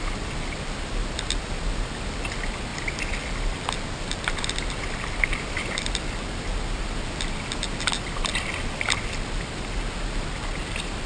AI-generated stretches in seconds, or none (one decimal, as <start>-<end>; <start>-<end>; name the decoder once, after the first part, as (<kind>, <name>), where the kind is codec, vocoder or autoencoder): none